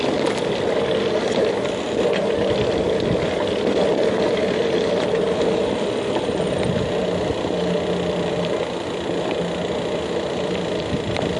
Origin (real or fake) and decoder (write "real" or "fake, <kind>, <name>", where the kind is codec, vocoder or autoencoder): real